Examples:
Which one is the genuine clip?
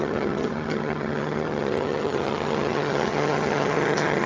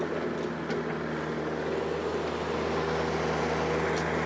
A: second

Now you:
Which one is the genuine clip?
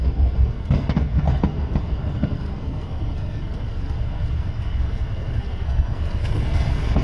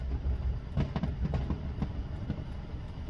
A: second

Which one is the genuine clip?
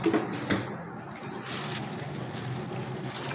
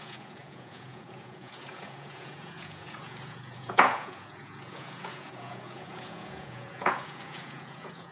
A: first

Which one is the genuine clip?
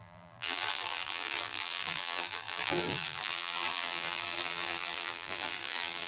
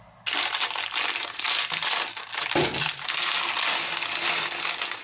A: second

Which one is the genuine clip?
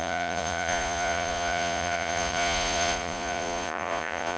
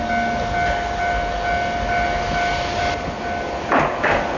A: second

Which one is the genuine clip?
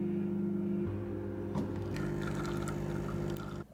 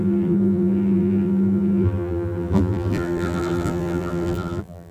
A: first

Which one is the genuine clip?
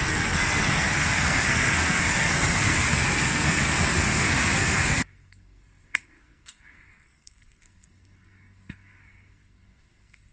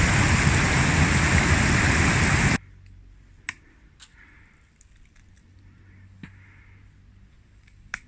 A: second